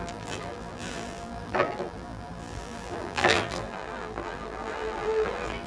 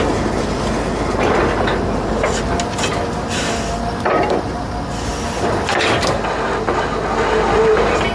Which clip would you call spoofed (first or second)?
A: first